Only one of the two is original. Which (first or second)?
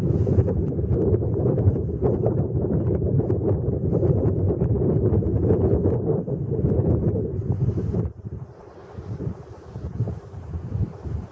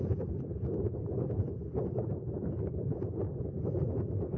second